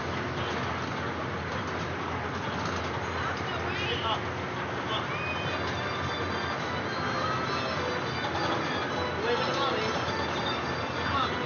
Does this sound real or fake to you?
real